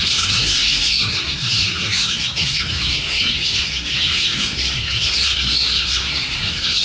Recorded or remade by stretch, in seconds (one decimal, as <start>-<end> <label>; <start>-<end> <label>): 0.0-6.8 remade